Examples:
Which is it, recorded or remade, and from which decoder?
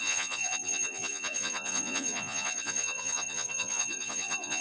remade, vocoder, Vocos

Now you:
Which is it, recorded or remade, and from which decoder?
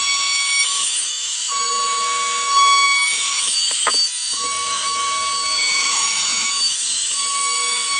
remade, autoencoder, DAC-VAE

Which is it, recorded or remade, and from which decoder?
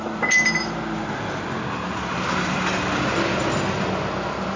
recorded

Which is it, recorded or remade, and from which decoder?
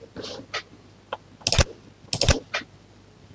recorded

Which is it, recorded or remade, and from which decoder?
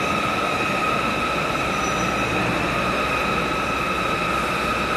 recorded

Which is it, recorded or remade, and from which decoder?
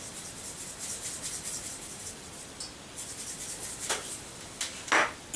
recorded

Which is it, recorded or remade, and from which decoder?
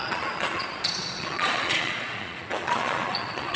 remade, vocoder, Vocos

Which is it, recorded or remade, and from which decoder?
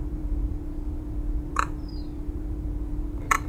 remade, vocoder, BigVGAN v2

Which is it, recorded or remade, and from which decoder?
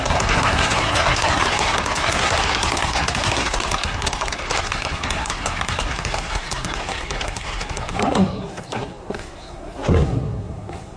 remade, codec, SNAC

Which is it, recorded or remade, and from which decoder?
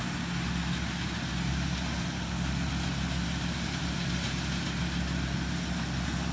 recorded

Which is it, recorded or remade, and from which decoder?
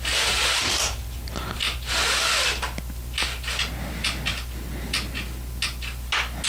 recorded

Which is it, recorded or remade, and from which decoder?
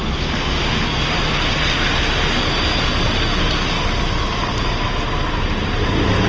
recorded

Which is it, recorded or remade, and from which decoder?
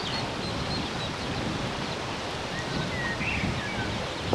recorded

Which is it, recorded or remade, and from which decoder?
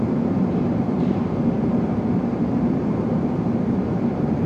remade, vocoder, BigVGAN v2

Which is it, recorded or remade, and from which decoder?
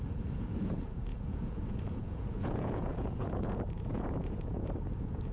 remade, vocoder, Vocos